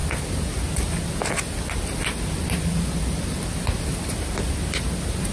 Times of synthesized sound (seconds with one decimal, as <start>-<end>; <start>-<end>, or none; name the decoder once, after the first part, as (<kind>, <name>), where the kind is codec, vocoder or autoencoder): none